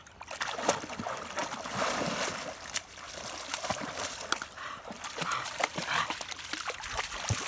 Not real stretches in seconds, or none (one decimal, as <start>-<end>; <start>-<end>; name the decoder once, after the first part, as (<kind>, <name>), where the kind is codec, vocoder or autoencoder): none